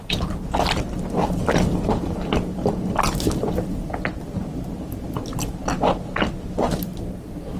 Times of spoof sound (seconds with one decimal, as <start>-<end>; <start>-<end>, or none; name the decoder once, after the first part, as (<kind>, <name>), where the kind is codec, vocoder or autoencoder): 0.0-5.3 (vocoder, BigVGAN v2); 6.6-7.6